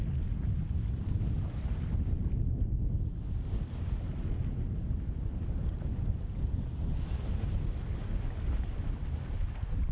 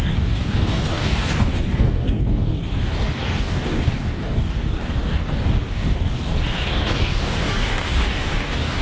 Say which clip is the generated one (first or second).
second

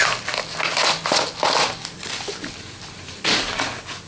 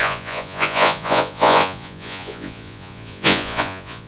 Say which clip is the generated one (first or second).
second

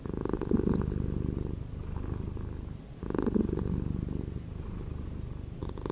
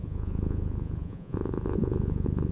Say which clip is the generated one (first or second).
second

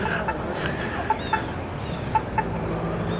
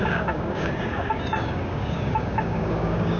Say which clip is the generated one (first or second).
second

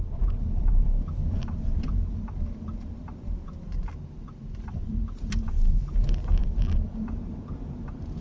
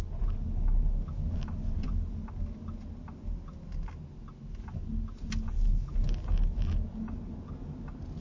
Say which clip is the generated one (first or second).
first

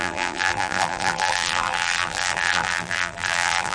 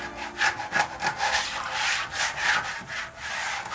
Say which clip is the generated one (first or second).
first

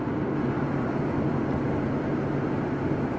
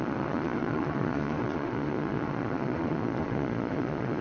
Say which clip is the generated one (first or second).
second